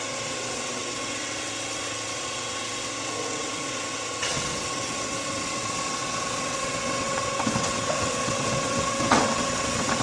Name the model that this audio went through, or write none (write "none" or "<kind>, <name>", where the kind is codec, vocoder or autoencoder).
vocoder, WaveNeXt